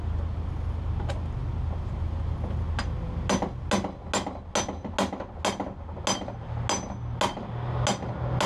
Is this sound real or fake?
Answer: real